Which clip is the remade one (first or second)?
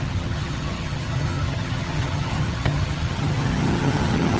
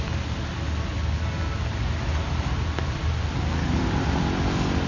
first